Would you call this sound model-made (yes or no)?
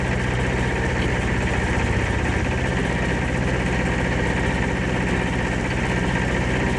no